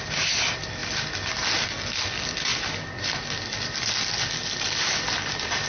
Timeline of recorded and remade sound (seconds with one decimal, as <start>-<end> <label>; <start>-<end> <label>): 0.0-5.7 recorded